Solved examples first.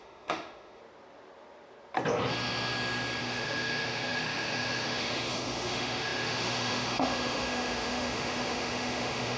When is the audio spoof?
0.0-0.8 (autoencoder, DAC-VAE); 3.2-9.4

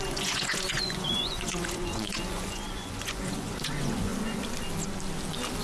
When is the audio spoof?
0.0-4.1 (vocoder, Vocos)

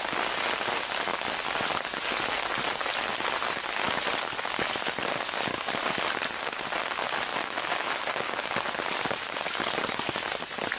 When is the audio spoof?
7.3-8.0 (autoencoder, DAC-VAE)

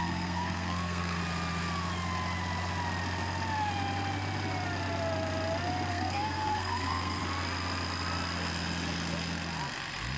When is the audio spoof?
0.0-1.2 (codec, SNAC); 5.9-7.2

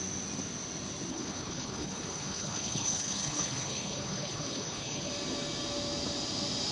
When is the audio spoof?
1.1-5.1 (codec, HILCodec)

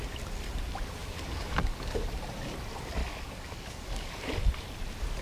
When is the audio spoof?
1.0-2.1 (codec, DAC); 3.0-4.1

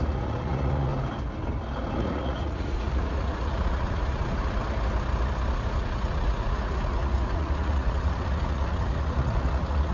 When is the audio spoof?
0.0-0.9 (vocoder, Vocos); 1.9-4.6; 5.5-9.9